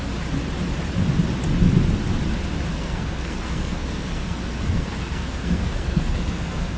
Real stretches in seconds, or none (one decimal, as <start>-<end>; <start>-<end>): 0.0-2.7